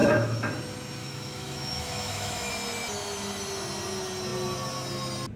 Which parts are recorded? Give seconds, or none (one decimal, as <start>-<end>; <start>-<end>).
0.5-1.0; 2.5-5.4